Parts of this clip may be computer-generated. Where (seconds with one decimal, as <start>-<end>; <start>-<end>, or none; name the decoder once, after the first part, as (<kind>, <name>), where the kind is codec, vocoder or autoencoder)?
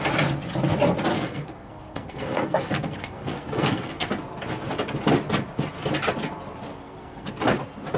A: 1.1-4.1 (codec, SNAC); 6.7-7.3